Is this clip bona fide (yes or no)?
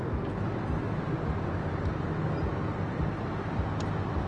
yes